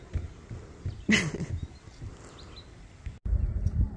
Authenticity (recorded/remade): recorded